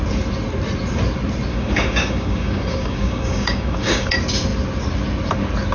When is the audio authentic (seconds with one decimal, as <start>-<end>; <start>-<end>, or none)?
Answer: 0.0-1.5; 4.1-5.7